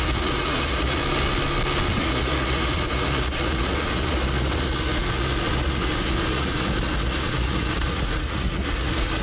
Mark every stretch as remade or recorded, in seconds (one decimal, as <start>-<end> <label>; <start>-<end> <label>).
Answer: 0.0-1.0 remade; 1.0-2.0 recorded; 2.0-9.2 remade